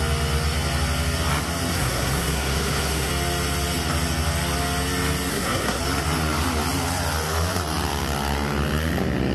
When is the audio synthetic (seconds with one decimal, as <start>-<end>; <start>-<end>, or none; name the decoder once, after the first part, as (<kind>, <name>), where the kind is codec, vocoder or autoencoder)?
1.7-3.1 (codec, SNAC); 5.3-5.8